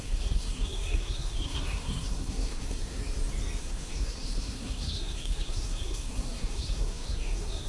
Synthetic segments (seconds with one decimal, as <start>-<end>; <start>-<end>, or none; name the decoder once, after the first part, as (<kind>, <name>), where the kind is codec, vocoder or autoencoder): 0.0-3.0 (codec, SNAC); 3.6-7.7

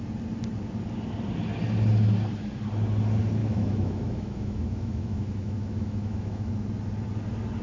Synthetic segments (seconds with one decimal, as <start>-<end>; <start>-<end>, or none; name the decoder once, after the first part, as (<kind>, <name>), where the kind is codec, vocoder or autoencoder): 3.4-6.5 (autoencoder, DAC-VAE)

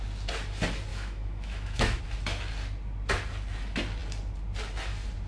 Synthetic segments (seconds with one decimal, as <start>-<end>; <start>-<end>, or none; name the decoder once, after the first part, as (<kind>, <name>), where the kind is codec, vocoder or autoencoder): 0.9-2.0 (autoencoder, DAC-VAE)

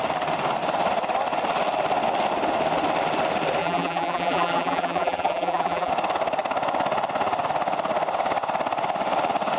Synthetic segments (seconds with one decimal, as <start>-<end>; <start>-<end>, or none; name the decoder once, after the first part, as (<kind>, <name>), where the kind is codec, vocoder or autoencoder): 3.6-5.9 (vocoder, BigVGAN v2)

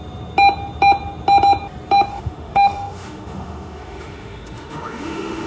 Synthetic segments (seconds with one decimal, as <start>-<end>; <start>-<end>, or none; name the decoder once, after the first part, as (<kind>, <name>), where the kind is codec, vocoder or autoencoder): 2.1-5.5 (autoencoder, DAC-VAE)